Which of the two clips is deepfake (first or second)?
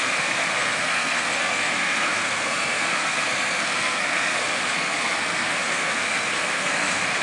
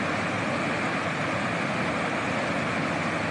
first